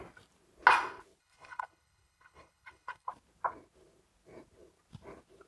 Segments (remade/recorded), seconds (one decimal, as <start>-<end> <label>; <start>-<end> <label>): 0.0-1.2 recorded; 1.2-3.1 remade; 3.1-5.5 recorded